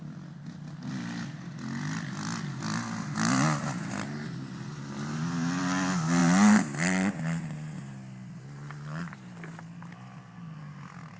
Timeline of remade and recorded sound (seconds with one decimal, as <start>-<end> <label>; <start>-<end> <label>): 0.0-11.2 recorded